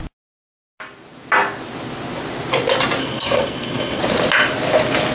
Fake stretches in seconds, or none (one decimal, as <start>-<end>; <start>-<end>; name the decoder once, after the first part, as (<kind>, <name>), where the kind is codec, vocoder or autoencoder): 3.0-4.0 (codec, SNAC)